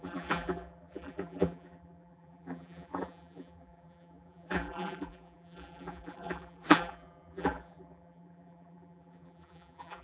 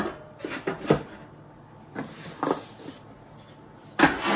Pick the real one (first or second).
second